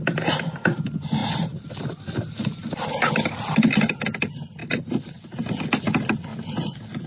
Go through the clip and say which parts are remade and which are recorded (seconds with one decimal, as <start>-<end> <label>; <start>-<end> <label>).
0.0-7.1 recorded